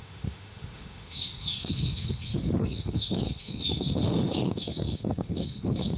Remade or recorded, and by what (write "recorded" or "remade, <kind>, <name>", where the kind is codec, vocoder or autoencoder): remade, autoencoder, DAC-VAE